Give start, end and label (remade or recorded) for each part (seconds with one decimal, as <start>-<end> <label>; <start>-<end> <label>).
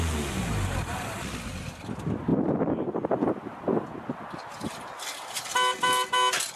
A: 0.0-6.6 recorded